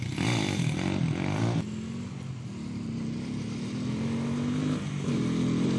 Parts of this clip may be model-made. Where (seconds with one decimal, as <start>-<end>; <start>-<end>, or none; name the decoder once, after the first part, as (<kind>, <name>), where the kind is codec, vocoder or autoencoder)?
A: none